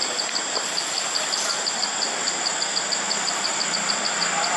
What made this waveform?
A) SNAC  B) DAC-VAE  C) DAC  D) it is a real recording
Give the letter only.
D